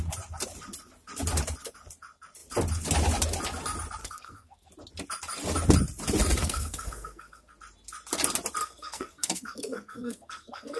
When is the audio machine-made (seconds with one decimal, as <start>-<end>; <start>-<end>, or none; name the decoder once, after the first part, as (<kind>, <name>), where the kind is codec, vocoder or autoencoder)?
4.0-4.7 (codec, SNAC); 6.4-7.5; 8.6-10.8